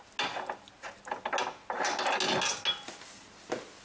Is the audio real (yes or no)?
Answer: yes